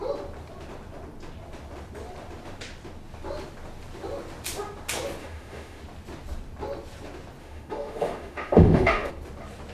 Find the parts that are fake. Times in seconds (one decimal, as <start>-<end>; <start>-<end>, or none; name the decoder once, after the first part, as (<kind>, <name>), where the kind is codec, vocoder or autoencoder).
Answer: 5.2-5.8 (autoencoder, DAC-VAE); 7.4-9.1